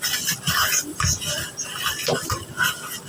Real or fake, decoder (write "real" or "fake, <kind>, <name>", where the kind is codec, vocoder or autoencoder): real